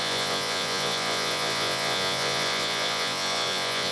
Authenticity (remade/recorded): remade